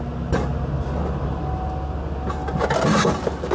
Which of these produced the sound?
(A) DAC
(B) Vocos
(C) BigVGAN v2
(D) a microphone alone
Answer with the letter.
D